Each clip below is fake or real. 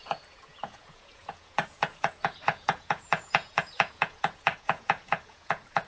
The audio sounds fake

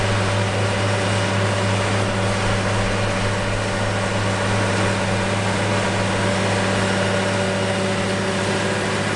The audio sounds real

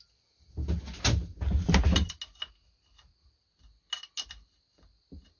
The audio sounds real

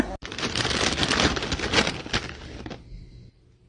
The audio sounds real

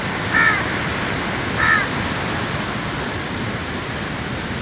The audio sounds real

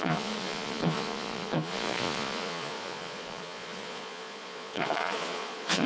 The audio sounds fake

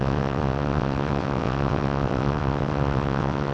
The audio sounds fake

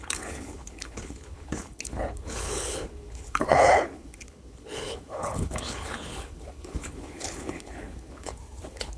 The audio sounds fake